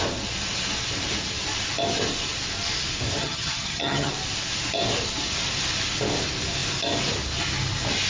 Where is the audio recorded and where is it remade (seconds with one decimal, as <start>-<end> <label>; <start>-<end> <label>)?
0.0-3.2 recorded; 3.2-4.1 remade; 4.1-8.1 recorded